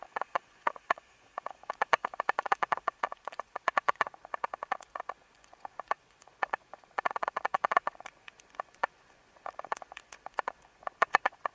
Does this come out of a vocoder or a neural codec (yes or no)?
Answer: yes